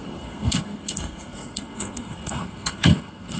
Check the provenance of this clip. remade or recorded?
remade